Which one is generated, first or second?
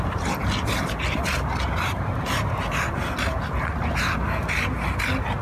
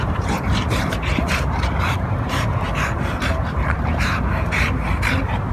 second